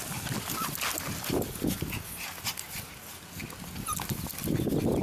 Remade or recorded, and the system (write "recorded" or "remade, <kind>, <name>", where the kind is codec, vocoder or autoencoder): recorded